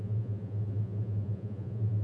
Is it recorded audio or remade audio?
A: remade